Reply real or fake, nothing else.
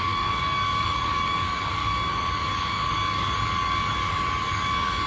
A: fake